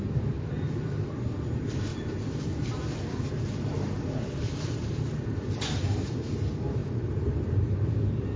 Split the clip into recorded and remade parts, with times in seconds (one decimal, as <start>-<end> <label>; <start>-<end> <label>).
0.0-8.4 remade